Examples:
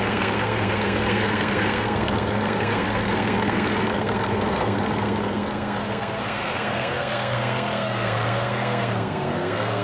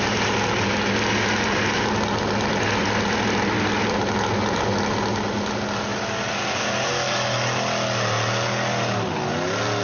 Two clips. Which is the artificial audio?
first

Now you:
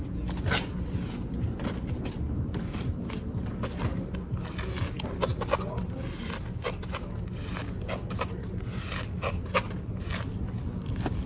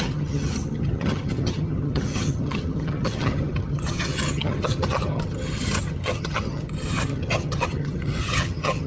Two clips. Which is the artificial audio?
second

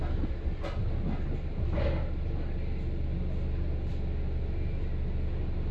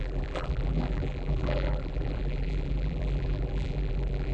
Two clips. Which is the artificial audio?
second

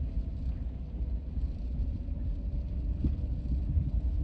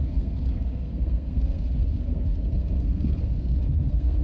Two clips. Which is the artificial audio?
second